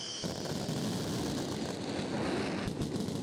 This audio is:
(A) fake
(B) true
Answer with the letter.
B